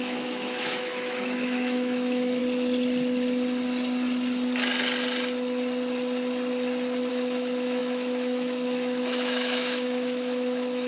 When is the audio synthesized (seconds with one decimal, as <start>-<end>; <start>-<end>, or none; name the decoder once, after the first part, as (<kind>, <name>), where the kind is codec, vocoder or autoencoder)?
0.0-2.4 (autoencoder, DAC-VAE); 7.1-10.9